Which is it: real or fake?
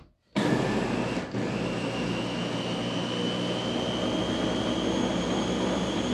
real